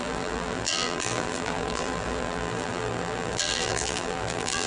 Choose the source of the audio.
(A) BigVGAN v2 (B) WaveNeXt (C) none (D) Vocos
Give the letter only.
A